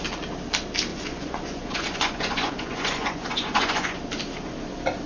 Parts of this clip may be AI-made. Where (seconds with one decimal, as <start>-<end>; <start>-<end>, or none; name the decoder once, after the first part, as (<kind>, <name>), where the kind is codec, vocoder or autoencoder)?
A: 0.9-4.0 (vocoder, Vocos)